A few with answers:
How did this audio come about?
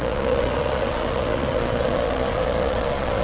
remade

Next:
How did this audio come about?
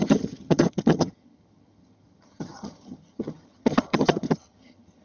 remade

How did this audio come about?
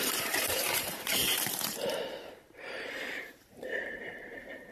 remade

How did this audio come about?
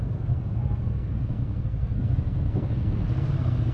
remade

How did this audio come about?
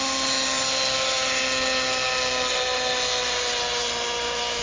recorded